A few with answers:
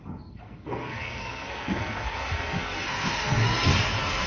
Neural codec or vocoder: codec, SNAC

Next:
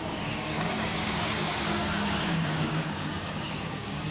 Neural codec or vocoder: codec, DAC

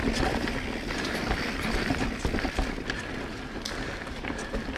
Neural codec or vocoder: none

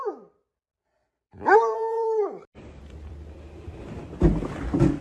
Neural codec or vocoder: vocoder, BigVGAN v2